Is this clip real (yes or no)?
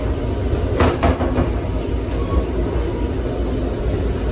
yes